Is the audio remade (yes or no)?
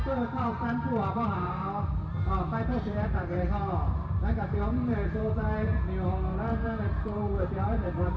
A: yes